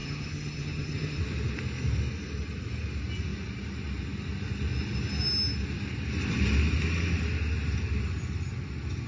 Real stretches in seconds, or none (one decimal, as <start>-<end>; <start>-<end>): 1.2-9.1